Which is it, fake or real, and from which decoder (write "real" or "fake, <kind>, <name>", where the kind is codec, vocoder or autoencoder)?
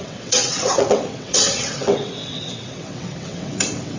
fake, vocoder, WaveNeXt